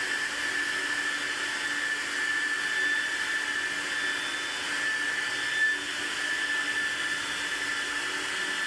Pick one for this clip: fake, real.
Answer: real